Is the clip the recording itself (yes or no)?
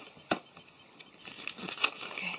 yes